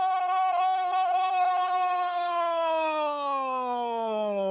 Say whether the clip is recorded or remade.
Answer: remade